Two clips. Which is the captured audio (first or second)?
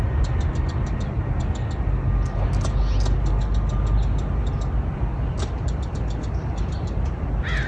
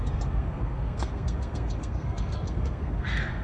first